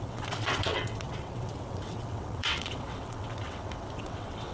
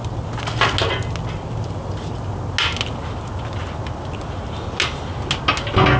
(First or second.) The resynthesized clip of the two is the first